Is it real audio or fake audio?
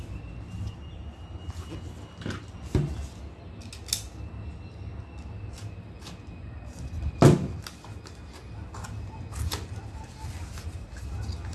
real